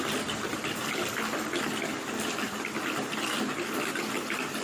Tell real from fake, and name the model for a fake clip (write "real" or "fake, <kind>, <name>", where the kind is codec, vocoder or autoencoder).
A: real